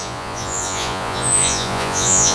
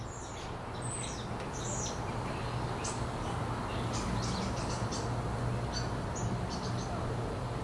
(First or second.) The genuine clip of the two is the second